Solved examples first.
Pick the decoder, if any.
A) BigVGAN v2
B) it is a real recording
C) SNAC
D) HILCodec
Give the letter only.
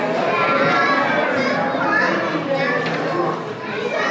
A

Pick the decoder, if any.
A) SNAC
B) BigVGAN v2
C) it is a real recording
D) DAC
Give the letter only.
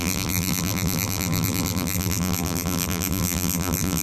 B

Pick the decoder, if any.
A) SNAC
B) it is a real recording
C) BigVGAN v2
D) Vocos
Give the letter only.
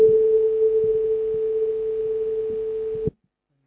B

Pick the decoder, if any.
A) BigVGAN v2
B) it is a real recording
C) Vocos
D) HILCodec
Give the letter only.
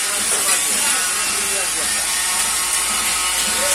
B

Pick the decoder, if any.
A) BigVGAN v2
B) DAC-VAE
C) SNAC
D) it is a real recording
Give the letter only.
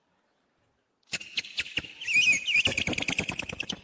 D